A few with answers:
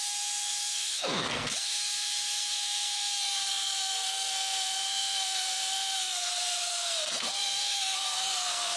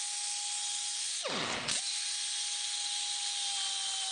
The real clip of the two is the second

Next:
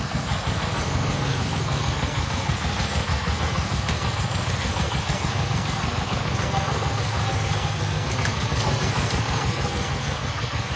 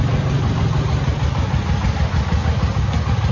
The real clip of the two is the second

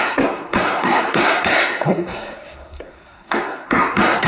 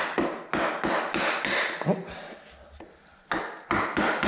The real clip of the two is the second